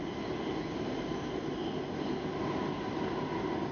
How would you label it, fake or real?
real